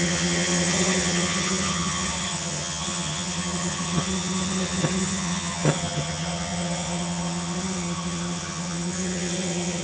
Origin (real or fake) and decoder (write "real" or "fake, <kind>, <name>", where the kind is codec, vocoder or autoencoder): fake, vocoder, HiFi-GAN